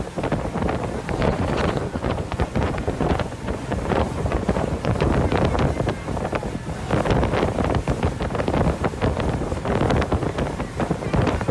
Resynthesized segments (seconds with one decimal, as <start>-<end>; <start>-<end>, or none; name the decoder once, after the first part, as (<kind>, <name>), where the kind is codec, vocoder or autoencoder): 1.2-5.1 (vocoder, Vocos)